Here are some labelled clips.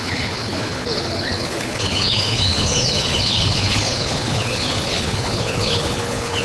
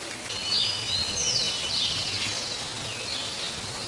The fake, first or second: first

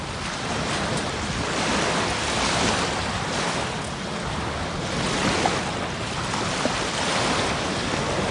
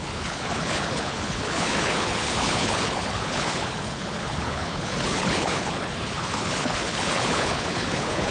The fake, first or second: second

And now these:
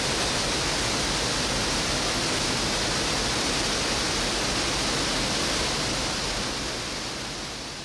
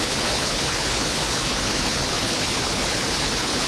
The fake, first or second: second